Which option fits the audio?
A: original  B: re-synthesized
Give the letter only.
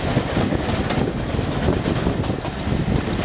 A